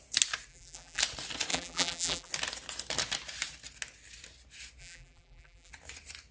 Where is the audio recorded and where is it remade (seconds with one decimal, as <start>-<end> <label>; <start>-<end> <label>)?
0.0-0.5 recorded; 0.5-1.0 remade; 1.0-1.5 recorded; 1.5-2.3 remade; 2.3-4.8 recorded; 4.8-5.7 remade; 5.7-6.3 recorded